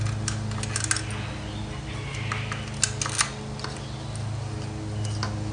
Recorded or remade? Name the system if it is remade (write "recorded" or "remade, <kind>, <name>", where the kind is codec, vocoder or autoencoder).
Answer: recorded